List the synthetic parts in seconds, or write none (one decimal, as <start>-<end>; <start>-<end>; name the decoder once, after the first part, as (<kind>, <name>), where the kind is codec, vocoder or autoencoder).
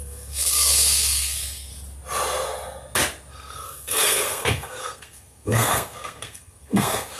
0.0-1.7 (codec, SNAC); 3.3-7.2